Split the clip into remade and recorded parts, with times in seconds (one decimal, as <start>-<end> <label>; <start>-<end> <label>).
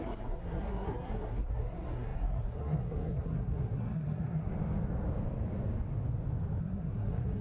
0.0-4.5 remade; 4.5-6.6 recorded; 6.6-7.4 remade